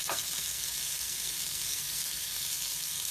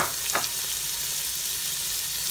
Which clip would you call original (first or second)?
second